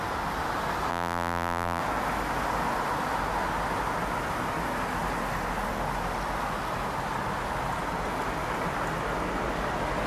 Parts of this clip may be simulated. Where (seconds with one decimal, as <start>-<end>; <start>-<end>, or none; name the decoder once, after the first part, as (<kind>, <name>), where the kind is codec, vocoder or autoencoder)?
0.9-1.8 (vocoder, BigVGAN v2)